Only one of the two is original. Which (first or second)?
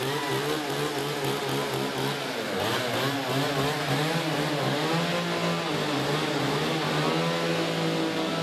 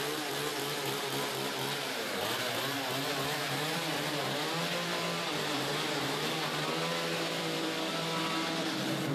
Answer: first